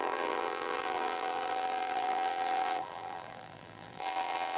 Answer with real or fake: fake